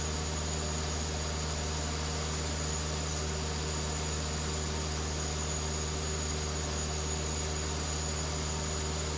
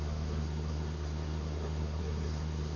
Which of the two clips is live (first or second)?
first